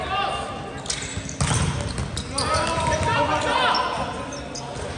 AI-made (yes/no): no